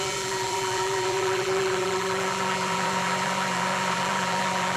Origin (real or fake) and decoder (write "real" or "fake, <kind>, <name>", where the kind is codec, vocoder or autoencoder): fake, vocoder, BigVGAN v2